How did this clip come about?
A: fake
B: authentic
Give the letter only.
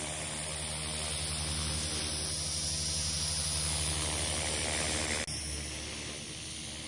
B